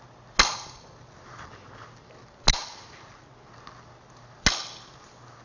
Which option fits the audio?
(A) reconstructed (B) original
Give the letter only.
B